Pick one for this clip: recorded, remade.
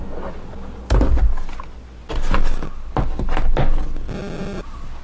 recorded